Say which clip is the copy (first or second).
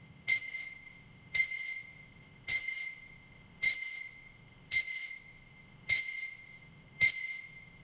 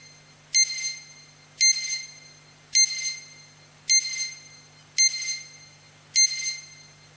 first